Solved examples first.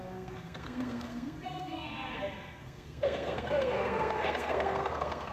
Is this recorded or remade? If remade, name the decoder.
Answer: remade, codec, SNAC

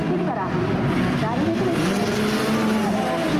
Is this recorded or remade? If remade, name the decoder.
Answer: recorded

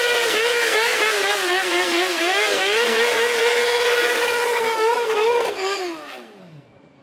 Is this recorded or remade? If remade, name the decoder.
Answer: remade, codec, SNAC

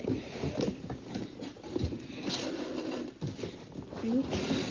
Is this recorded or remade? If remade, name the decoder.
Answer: recorded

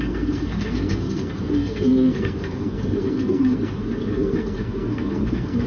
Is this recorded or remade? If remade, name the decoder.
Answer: remade, codec, SNAC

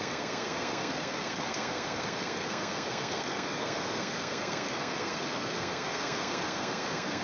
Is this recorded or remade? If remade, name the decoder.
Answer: remade, codec, SNAC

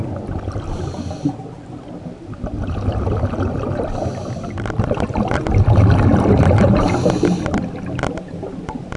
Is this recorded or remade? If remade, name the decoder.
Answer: recorded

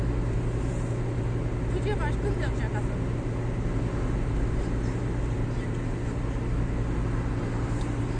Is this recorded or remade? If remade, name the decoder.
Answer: recorded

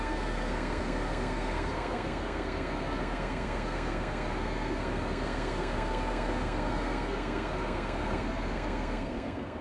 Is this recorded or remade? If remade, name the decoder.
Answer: remade, codec, SNAC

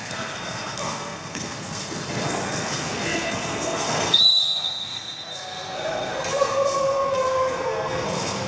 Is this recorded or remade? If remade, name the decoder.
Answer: remade, codec, SNAC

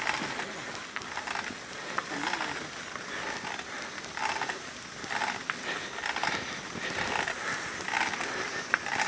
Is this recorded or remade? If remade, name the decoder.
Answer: recorded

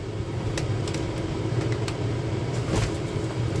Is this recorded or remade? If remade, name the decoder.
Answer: recorded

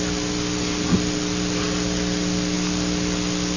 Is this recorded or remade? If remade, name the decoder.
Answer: recorded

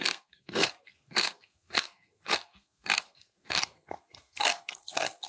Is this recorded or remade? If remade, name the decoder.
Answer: remade, codec, SNAC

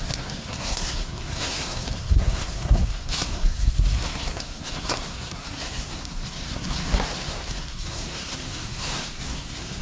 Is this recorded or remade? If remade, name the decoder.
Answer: remade, codec, SNAC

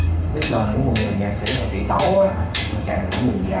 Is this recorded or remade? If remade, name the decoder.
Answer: remade, codec, SNAC